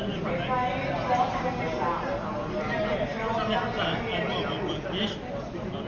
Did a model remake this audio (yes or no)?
no